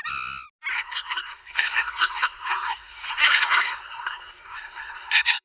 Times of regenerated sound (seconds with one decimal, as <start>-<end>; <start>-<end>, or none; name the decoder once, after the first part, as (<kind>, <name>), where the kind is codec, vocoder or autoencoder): 0.7-5.4 (codec, SNAC)